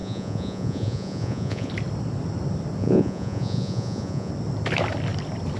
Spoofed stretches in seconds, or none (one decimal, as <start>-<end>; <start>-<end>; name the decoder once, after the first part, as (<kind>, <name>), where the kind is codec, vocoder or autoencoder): 0.0-1.7 (vocoder, Vocos); 2.8-4.3